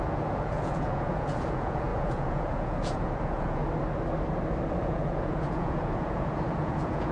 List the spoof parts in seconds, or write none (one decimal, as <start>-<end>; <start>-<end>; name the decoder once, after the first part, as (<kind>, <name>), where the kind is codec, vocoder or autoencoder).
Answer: 0.0-3.6 (vocoder, Vocos); 4.7-7.1